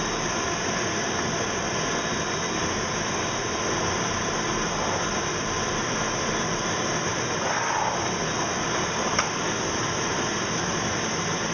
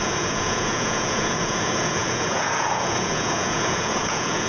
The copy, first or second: second